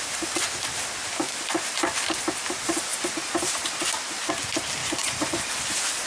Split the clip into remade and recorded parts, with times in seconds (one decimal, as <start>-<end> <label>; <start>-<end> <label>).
0.0-4.8 recorded; 4.8-5.4 remade; 5.4-6.1 recorded